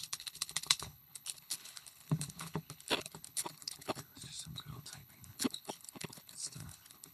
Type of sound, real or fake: fake